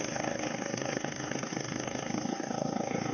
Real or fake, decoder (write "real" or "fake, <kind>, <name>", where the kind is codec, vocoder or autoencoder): fake, codec, SNAC